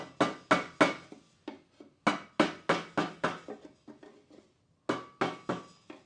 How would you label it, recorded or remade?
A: recorded